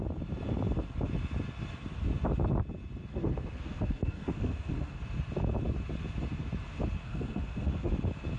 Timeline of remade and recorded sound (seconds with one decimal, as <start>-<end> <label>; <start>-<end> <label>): 0.0-3.1 recorded; 3.1-5.0 remade; 5.0-7.0 recorded; 7.0-7.9 remade; 7.9-8.4 recorded